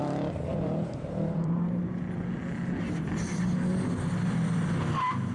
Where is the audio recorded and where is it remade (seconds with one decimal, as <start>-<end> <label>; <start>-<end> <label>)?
0.0-0.5 recorded; 0.5-1.8 remade; 1.8-5.3 recorded

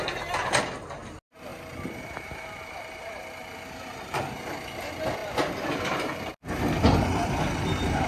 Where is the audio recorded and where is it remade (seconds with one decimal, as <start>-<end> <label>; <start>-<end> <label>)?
0.0-8.1 recorded

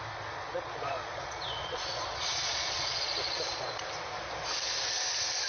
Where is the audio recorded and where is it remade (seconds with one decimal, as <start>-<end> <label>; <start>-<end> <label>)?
0.0-0.5 recorded; 0.5-3.8 remade; 3.8-5.5 recorded